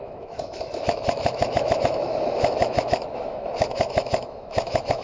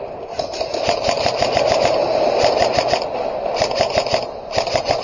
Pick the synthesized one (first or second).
first